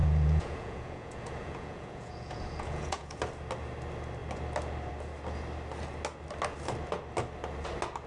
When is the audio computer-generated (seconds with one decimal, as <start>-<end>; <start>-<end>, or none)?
0.0-3.2